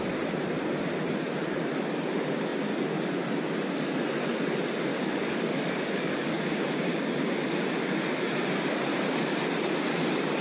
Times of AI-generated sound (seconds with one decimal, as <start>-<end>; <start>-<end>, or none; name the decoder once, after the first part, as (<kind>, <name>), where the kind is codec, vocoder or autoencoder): 4.9-6.4 (codec, DAC)